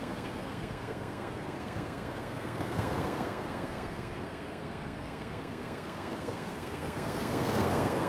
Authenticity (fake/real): fake